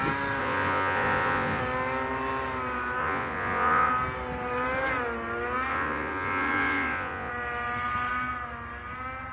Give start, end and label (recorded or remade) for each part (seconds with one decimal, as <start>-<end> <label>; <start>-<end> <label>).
0.0-0.4 recorded; 0.4-1.6 remade; 1.6-3.0 recorded; 3.0-3.9 remade; 3.9-5.7 recorded; 5.7-7.3 remade; 7.3-9.3 recorded